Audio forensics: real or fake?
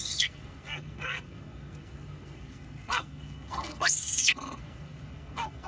fake